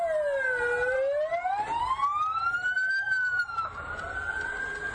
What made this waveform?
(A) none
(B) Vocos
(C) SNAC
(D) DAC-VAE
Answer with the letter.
A